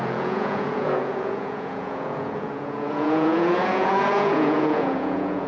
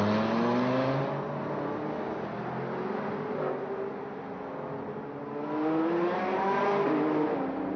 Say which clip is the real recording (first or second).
second